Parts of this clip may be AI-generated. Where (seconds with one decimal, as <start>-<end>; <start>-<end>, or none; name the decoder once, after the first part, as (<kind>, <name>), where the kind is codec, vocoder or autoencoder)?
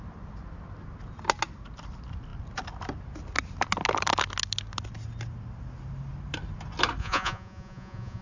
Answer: 7.0-8.2 (vocoder, Vocos)